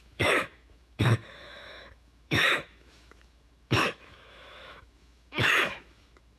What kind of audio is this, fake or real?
fake